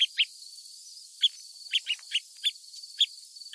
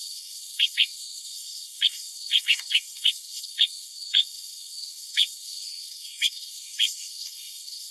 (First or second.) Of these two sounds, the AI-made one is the second